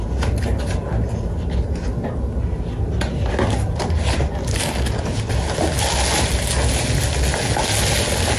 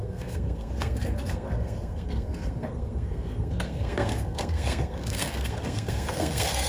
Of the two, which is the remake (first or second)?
second